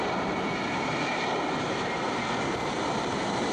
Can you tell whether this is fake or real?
fake